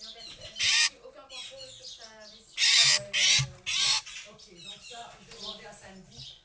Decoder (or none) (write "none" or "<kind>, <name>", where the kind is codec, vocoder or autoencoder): none